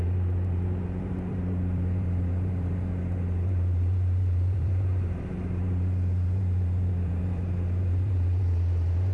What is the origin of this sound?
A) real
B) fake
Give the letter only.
B